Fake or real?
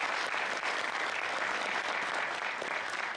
real